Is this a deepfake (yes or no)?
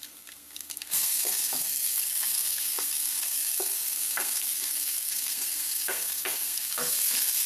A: yes